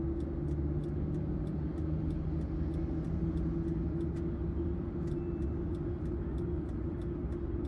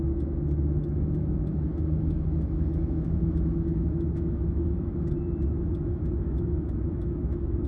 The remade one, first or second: second